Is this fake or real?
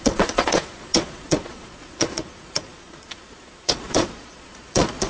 fake